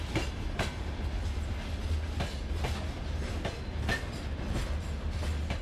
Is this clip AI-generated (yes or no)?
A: no